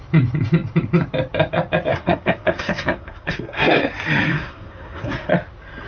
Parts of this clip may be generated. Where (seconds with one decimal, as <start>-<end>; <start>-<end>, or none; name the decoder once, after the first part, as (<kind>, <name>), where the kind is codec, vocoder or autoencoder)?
1.9-3.8 (codec, SNAC); 4.3-5.3